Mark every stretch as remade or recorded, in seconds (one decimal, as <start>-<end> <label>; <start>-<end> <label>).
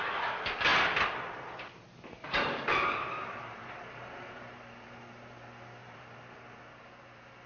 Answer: 0.0-2.7 recorded; 2.7-5.0 remade; 5.0-5.8 recorded; 5.8-6.5 remade; 6.5-7.5 recorded